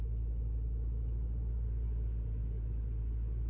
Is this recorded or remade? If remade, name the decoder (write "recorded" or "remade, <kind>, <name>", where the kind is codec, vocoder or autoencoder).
recorded